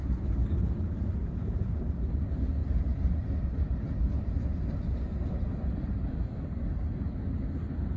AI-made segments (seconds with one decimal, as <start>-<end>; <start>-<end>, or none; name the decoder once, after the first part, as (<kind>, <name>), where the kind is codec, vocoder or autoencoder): 0.0-0.6 (vocoder, BigVGAN v2); 2.6-4.0; 5.1-6.9